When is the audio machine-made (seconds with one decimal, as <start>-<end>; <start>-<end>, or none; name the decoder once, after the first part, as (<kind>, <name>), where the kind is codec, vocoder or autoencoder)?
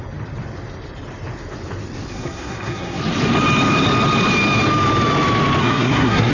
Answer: 2.1-3.0 (codec, SNAC); 5.6-6.3